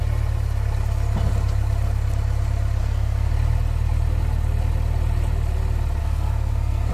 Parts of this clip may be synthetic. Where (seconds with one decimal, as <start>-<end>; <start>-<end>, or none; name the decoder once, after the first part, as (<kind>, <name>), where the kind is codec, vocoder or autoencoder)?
2.8-3.3 (codec, SNAC); 6.0-6.9

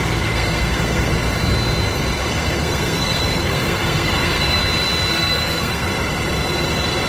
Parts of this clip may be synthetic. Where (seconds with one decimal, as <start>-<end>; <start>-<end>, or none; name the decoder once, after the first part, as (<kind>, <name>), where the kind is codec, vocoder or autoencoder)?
0.0-1.1 (codec, SNAC); 2.3-4.6; 5.1-5.9